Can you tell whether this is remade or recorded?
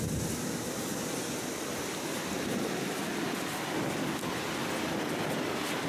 recorded